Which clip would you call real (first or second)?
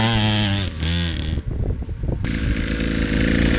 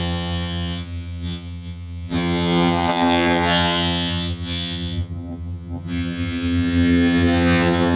first